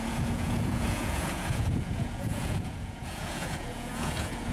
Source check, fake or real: fake